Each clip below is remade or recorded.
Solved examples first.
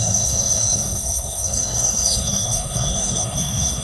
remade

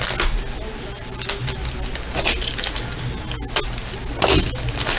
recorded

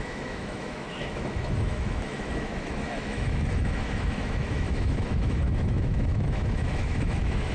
remade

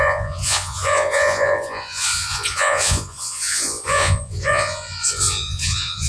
remade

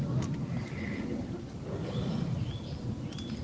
recorded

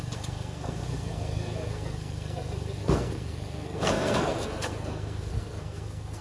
remade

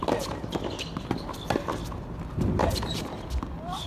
recorded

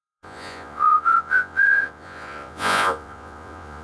remade